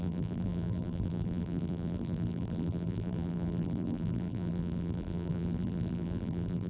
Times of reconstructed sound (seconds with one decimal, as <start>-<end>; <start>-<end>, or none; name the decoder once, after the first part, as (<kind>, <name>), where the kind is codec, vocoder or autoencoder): 0.0-6.7 (vocoder, BigVGAN v2)